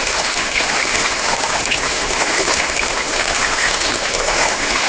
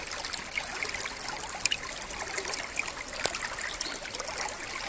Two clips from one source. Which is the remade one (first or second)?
first